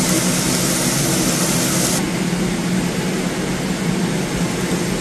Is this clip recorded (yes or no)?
yes